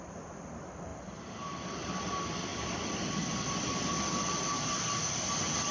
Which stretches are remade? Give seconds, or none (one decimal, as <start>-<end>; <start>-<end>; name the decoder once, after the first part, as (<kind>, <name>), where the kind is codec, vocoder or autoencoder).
0.9-2.1 (vocoder, BigVGAN v2); 2.5-4.8